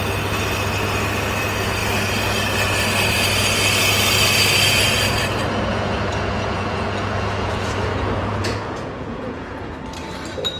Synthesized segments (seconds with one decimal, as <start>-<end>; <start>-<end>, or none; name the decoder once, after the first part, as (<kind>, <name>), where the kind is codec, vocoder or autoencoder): 5.7-9.7 (vocoder, Vocos)